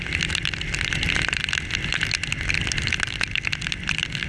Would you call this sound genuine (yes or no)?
yes